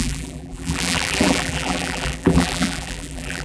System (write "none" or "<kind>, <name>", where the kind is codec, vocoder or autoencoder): vocoder, BigVGAN v2